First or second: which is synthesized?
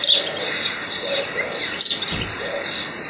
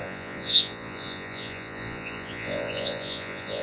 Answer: second